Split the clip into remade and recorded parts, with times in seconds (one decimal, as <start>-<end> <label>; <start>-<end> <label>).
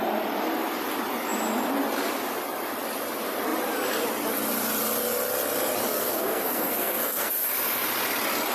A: 0.0-5.9 recorded; 5.9-7.3 remade; 7.3-8.5 recorded